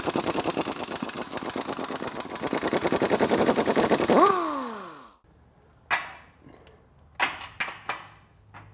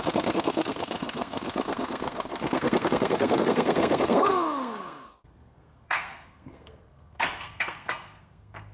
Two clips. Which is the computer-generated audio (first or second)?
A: second